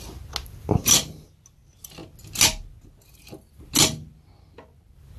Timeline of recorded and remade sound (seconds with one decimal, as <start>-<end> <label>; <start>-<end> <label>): 0.0-5.2 recorded